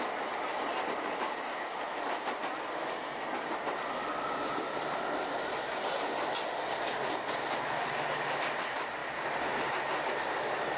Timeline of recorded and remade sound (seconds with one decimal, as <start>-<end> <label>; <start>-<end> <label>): 0.0-10.8 recorded